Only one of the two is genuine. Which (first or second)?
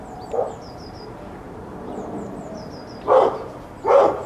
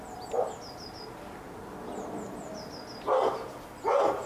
second